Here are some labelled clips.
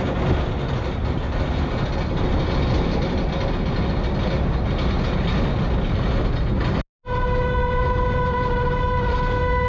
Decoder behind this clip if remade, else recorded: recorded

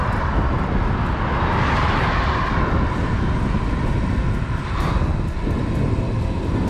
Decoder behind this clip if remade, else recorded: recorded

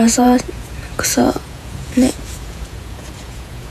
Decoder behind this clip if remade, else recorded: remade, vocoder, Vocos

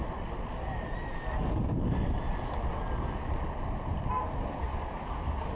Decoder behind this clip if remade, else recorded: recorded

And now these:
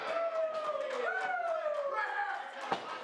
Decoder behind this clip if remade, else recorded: recorded